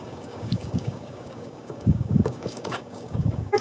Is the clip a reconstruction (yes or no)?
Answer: yes